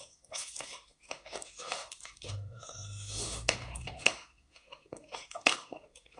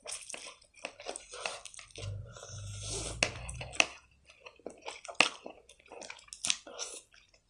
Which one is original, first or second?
second